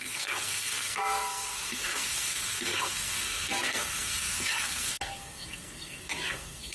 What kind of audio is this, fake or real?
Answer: fake